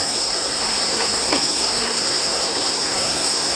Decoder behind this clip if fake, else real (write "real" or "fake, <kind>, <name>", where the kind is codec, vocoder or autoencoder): fake, codec, SNAC